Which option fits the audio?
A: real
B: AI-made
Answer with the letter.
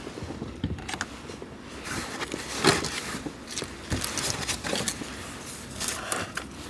A